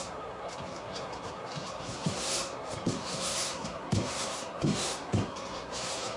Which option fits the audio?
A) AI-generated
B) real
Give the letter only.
A